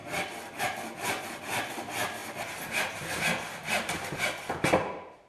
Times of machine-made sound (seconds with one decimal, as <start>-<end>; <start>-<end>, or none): none